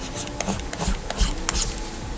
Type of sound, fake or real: real